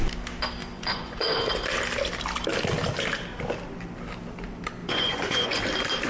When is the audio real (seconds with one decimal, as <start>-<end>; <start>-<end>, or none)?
0.0-0.6; 1.5-4.8; 5.6-6.1